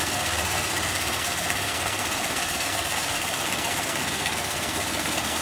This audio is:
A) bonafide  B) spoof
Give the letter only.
B